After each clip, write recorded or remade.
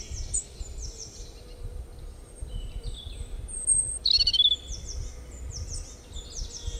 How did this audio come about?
remade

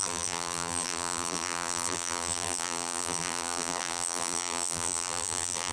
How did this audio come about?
remade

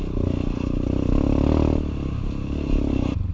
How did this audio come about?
recorded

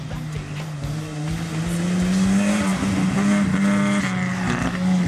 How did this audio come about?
recorded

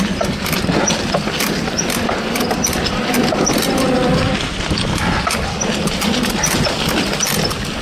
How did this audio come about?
recorded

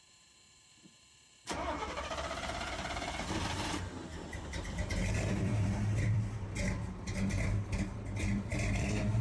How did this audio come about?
remade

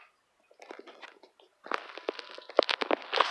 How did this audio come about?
recorded